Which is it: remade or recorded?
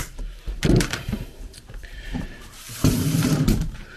remade